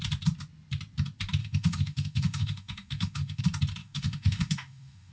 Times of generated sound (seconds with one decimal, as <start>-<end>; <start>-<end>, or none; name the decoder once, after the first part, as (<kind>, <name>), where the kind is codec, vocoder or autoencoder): 1.4-3.4 (autoencoder, DAC-VAE); 3.8-5.1